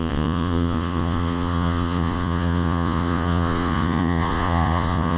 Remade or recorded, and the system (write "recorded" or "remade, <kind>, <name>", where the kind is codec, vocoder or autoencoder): remade, vocoder, Vocos